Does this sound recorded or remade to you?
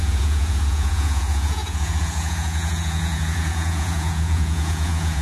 remade